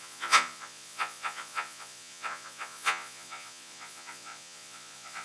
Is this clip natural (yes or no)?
no